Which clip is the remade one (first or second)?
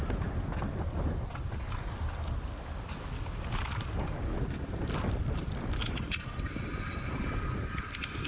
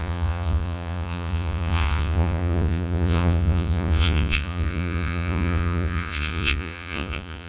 second